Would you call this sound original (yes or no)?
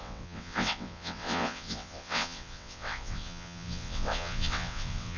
no